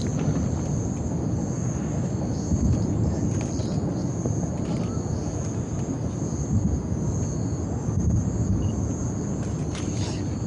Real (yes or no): yes